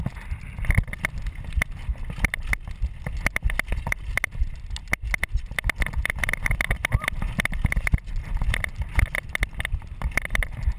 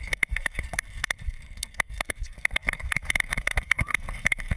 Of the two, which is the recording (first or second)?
first